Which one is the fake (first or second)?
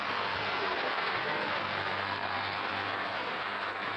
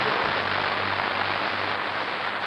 first